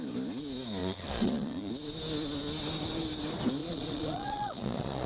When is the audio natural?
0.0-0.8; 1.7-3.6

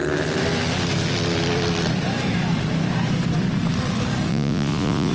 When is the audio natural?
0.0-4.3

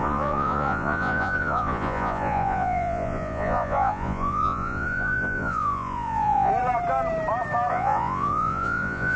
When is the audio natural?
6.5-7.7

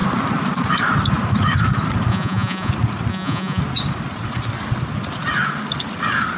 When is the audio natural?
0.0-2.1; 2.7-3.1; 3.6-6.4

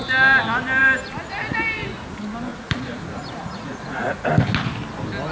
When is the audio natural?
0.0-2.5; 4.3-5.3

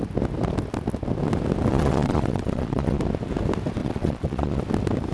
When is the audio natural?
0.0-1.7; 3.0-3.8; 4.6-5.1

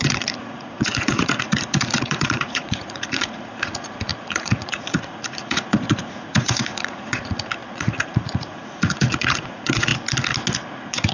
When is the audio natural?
9.9-10.7